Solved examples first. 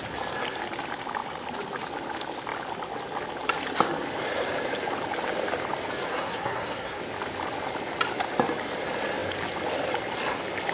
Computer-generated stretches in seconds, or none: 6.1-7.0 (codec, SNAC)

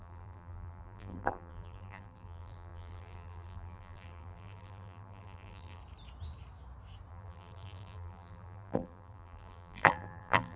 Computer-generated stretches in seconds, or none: 0.0-5.8 (vocoder, BigVGAN v2); 7.1-10.6